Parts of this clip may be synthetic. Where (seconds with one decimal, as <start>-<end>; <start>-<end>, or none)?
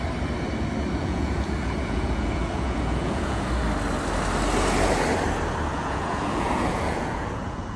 1.0-3.5; 5.7-7.8